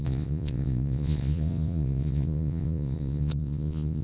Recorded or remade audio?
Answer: remade